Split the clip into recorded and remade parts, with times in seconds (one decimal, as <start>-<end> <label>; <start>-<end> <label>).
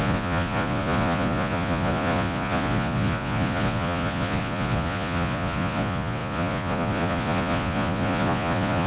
0.0-8.9 remade